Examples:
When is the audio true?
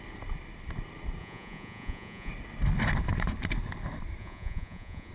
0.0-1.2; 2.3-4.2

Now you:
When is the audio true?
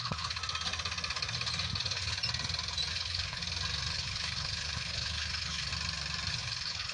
0.4-1.8; 2.2-2.9; 3.4-3.9; 5.7-6.3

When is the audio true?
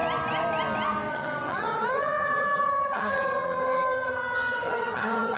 0.0-1.1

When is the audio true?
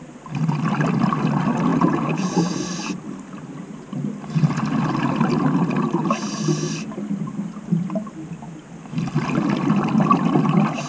0.0-1.7; 2.3-10.9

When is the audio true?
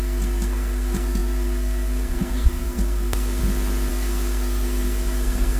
3.4-3.9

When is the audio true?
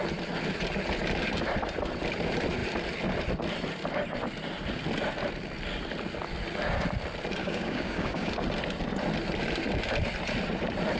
0.0-7.4; 8.3-11.0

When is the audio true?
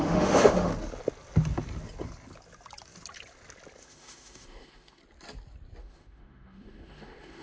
0.7-3.8; 5.0-5.8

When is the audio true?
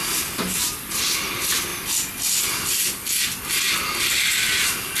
0.0-5.0